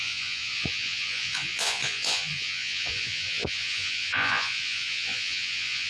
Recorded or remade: remade